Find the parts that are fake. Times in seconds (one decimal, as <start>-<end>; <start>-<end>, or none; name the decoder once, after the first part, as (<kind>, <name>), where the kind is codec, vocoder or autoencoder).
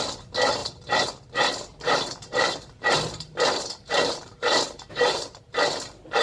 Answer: 0.6-1.1 (vocoder, BigVGAN v2); 1.7-5.4